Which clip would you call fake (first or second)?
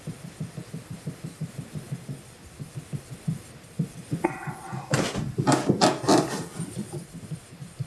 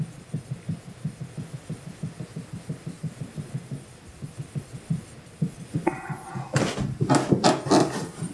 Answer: first